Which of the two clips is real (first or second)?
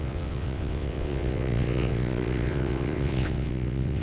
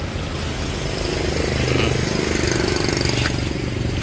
second